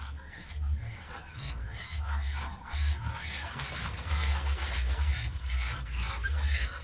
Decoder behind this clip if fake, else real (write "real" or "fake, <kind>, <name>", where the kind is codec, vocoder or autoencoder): fake, codec, SNAC